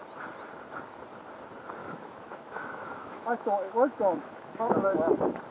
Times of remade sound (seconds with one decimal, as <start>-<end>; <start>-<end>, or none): 1.8-5.1